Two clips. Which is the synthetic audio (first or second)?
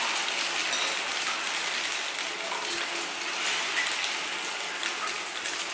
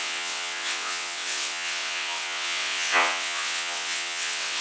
second